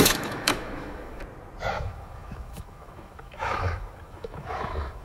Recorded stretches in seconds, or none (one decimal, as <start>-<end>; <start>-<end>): 1.2-1.7